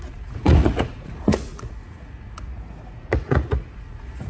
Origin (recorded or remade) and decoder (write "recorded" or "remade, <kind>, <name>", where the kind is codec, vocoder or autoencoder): remade, vocoder, Vocos